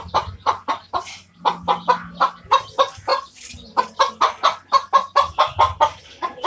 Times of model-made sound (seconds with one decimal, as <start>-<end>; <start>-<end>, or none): none